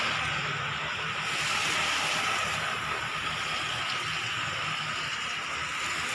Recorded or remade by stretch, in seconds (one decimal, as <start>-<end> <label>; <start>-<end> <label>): 0.0-6.1 recorded

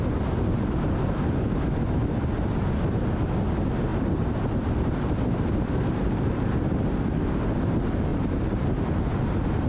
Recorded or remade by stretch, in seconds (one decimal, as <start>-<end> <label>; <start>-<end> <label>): 0.0-3.9 recorded; 3.9-6.6 remade; 6.6-8.1 recorded; 8.1-8.9 remade; 8.9-9.7 recorded

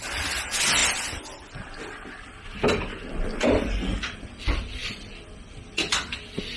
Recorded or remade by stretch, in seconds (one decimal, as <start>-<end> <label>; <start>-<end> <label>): 0.0-6.6 recorded

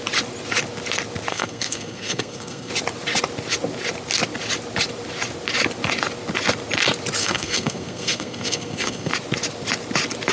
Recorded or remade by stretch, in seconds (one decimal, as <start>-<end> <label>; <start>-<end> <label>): 0.0-1.3 recorded; 1.3-2.7 remade; 2.7-7.2 recorded; 7.2-9.1 remade; 9.1-10.3 recorded

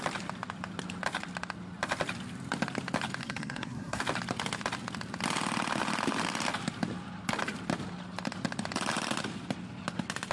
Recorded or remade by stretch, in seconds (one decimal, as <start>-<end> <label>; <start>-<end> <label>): 0.0-3.2 recorded; 3.2-4.0 remade; 4.0-10.3 recorded

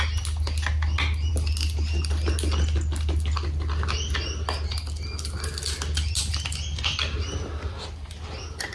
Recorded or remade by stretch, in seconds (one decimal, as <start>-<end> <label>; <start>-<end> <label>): 0.0-8.7 recorded